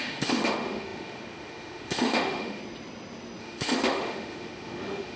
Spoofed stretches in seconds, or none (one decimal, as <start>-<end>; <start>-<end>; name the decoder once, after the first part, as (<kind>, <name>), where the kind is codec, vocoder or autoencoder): 0.0-2.6 (autoencoder, DAC-VAE); 3.4-5.2

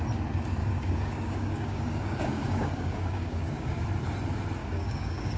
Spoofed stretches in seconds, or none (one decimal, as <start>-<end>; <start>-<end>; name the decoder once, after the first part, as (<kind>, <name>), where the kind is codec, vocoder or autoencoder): 0.6-3.8 (codec, DAC); 4.6-5.4

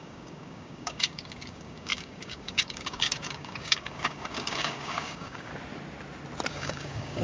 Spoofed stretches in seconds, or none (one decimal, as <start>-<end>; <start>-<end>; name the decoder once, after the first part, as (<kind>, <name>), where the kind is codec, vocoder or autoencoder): 0.0-5.5 (codec, DAC); 6.5-7.2